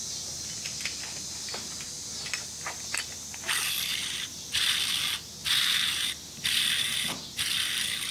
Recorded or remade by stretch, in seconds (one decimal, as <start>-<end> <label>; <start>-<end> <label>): 0.0-3.9 recorded; 3.9-5.0 remade; 5.0-5.4 recorded; 5.4-6.7 remade; 6.7-8.1 recorded